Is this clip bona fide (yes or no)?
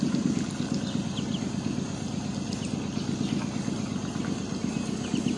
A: yes